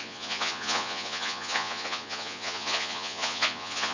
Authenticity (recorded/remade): remade